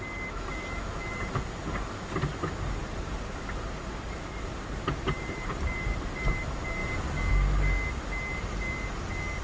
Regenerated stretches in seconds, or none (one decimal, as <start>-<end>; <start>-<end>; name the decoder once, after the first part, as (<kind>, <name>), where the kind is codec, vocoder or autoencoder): 2.8-6.2 (vocoder, BigVGAN v2)